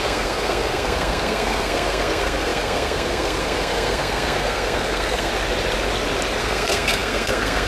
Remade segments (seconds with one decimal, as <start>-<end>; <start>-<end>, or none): 0.0-5.3; 6.4-7.7